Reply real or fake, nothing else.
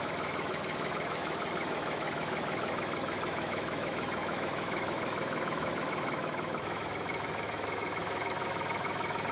fake